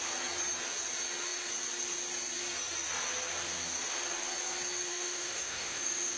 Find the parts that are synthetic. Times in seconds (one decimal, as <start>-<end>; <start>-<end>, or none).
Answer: 4.9-6.2

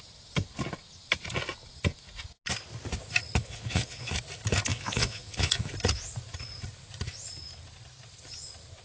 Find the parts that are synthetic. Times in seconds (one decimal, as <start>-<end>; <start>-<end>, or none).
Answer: 3.4-4.1; 4.7-5.7

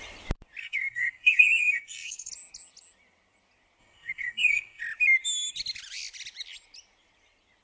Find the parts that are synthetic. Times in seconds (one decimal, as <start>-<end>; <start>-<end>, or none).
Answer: 0.6-2.3; 3.8-4.8